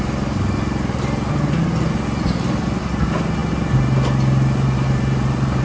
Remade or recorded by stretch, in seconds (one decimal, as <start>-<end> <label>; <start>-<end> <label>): 0.0-5.6 recorded